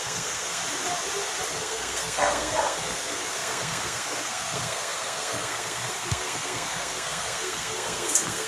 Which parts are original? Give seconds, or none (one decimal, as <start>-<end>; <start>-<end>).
0.6-1.5